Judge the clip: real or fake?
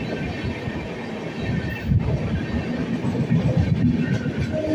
real